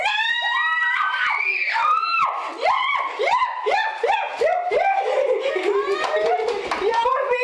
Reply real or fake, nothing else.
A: real